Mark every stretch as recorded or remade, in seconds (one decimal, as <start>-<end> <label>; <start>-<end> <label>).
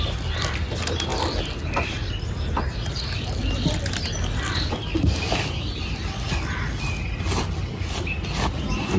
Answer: 0.0-9.0 recorded